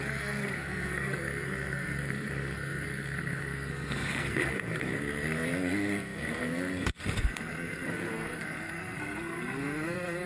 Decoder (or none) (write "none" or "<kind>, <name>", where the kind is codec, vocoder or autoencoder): codec, SNAC